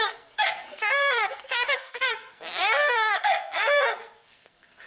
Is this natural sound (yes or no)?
no